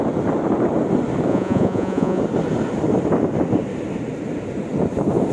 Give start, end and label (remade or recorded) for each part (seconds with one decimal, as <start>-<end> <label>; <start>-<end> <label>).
0.0-1.3 recorded; 1.3-2.2 remade; 2.2-5.3 recorded